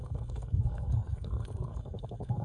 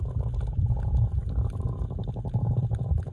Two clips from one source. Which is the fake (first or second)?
first